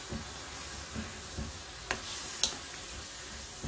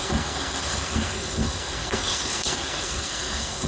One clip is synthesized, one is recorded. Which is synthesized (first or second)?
second